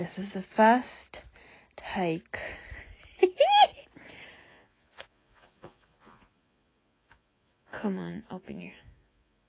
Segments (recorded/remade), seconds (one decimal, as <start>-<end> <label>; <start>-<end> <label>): 0.0-4.5 recorded; 4.5-9.5 remade